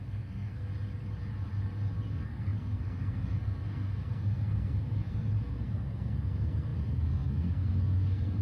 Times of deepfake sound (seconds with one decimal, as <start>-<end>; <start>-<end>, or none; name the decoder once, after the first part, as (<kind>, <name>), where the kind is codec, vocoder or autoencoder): 0.0-0.7 (codec, SNAC); 2.1-8.4